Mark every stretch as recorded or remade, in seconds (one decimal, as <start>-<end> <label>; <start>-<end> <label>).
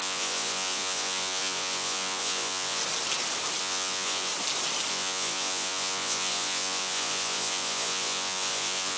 0.0-2.8 remade; 2.8-3.6 recorded; 3.6-4.3 remade; 4.3-4.9 recorded; 4.9-9.0 remade